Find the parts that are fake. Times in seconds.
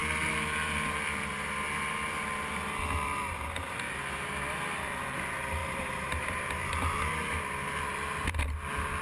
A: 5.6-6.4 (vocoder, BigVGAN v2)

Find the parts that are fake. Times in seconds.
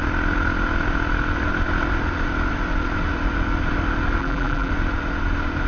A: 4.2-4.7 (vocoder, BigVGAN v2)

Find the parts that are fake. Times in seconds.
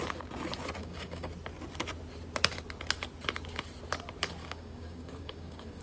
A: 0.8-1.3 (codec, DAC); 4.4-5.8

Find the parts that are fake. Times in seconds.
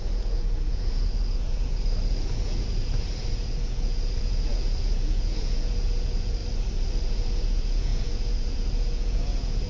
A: 0.0-6.4 (vocoder, Vocos); 7.0-9.7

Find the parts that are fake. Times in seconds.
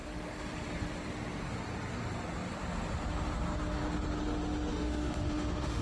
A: 4.7-5.8 (autoencoder, DAC-VAE)